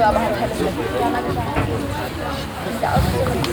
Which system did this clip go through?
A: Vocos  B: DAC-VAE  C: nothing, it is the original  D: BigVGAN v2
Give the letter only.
C